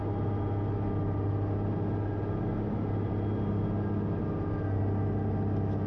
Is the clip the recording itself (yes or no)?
yes